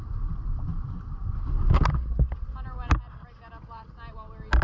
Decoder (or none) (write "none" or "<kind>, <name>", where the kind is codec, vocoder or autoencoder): none